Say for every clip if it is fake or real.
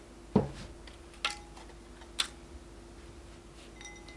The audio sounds real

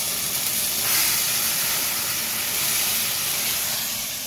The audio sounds real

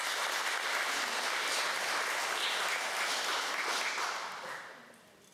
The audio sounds real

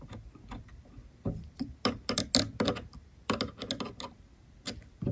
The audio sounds real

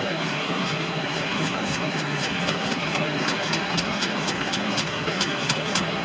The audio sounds fake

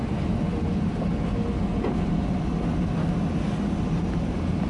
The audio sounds real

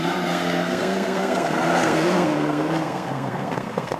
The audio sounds fake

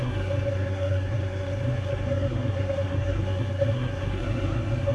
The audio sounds fake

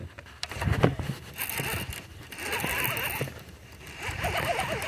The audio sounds real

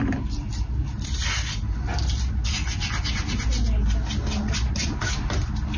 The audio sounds real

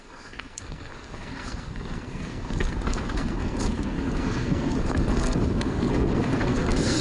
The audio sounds fake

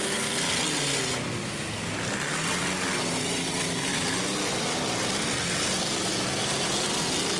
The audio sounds real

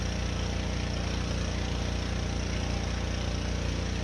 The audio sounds real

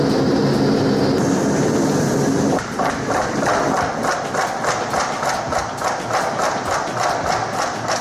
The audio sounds real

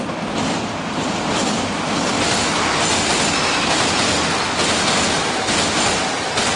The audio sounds real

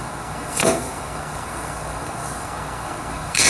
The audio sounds fake